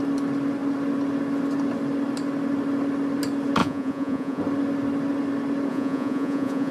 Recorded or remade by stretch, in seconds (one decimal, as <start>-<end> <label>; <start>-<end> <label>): 0.0-3.6 recorded; 3.6-4.4 remade; 4.4-5.7 recorded; 5.7-6.7 remade